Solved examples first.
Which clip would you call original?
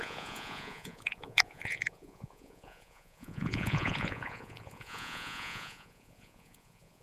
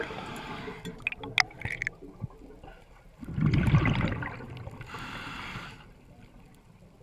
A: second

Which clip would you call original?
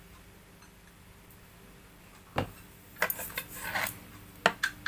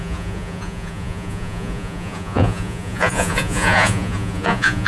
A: first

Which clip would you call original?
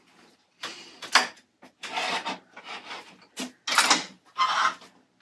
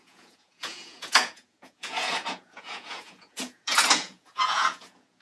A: first